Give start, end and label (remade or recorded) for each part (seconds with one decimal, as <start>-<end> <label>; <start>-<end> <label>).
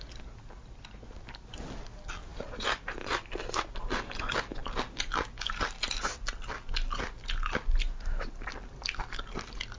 0.0-9.8 recorded